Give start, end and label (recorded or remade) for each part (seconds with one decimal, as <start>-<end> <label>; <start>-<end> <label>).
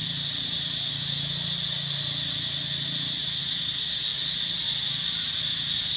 0.0-6.0 recorded